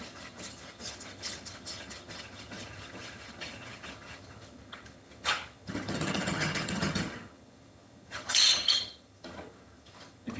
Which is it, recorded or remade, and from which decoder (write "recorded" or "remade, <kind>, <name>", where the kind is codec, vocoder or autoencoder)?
remade, vocoder, HiFi-GAN